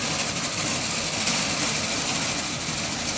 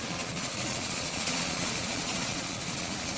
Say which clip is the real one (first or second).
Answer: first